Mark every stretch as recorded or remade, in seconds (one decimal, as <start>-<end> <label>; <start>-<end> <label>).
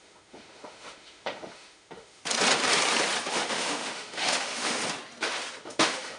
0.0-2.2 remade; 2.2-3.3 recorded; 3.3-4.8 remade; 4.8-5.6 recorded; 5.6-6.2 remade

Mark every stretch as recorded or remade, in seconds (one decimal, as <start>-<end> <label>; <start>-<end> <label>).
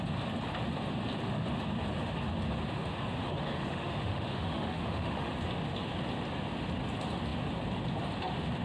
0.0-3.2 recorded; 3.2-5.3 remade; 5.3-8.6 recorded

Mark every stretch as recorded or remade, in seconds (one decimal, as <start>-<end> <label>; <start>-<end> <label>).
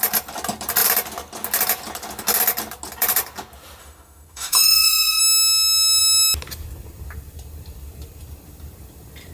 0.0-3.8 recorded; 3.8-5.2 remade; 5.2-9.3 recorded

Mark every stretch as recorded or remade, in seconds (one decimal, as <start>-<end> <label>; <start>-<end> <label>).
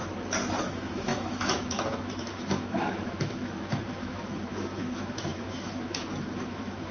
0.0-0.6 recorded; 0.6-6.9 remade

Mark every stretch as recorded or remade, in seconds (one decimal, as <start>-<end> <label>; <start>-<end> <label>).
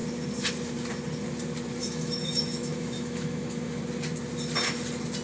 0.0-1.8 recorded; 1.8-3.8 remade; 3.8-5.2 recorded